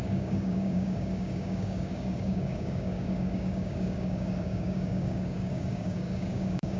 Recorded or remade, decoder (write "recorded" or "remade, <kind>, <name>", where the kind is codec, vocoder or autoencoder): remade, codec, DAC